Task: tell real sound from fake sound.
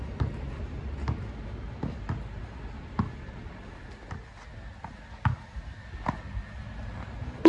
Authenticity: real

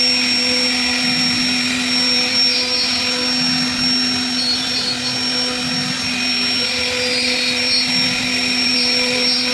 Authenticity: real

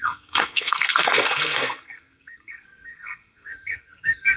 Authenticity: fake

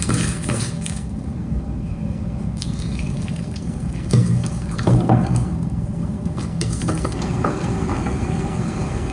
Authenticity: fake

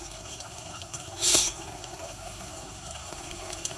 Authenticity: fake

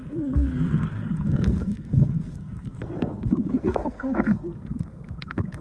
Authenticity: fake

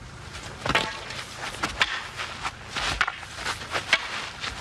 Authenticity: real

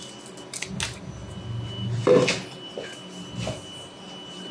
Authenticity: real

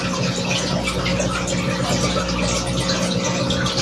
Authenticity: real